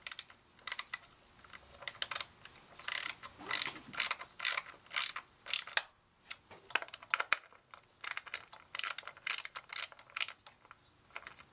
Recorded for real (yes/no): yes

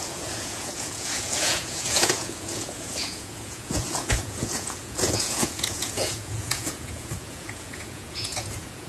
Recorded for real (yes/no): no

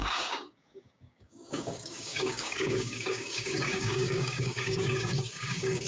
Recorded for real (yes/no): no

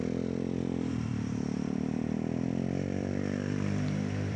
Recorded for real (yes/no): no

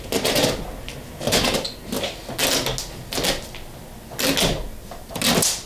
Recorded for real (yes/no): yes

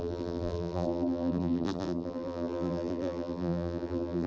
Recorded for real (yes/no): no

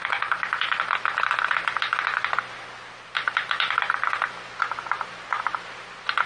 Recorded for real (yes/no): yes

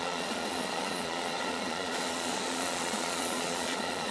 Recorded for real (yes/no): no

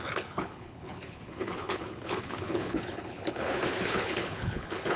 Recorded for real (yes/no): no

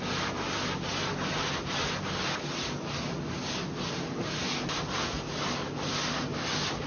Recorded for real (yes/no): yes